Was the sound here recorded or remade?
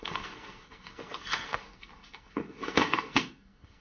remade